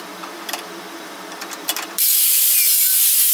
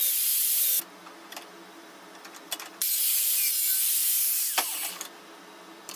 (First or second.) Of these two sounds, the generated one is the first